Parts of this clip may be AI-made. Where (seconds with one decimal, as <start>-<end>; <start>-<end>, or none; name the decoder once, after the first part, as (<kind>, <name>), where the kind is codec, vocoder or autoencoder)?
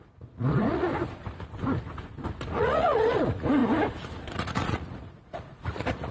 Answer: 0.0-0.9 (vocoder, Vocos); 2.5-3.6; 4.3-6.1